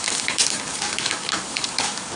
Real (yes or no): no